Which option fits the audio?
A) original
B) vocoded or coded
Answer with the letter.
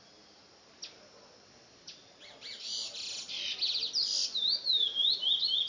A